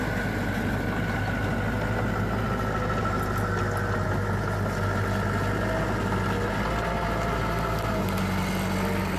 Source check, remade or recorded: recorded